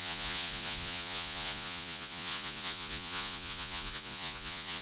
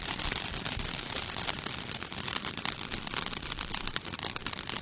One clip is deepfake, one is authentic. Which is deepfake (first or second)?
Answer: first